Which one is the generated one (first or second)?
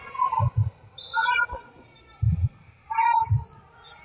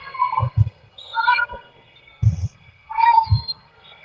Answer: second